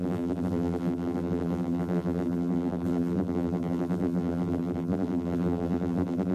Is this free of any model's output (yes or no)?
no